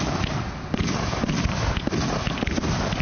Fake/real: real